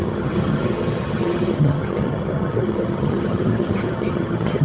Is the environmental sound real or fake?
fake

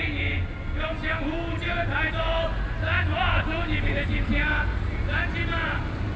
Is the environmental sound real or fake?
real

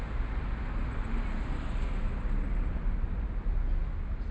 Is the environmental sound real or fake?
real